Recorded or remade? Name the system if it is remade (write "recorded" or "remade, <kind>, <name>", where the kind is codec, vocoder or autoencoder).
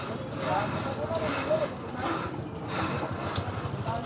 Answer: recorded